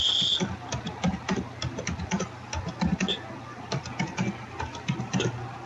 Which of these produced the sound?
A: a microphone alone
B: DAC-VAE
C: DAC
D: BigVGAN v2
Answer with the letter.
A